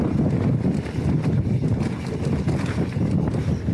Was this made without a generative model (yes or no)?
yes